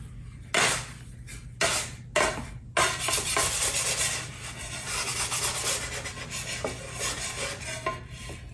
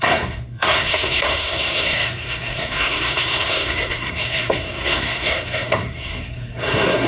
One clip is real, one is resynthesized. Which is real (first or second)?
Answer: first